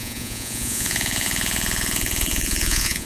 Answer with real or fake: fake